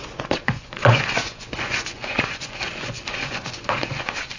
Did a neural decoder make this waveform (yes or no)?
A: yes